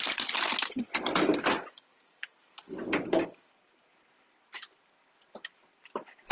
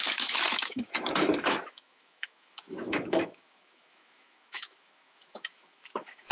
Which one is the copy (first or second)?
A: second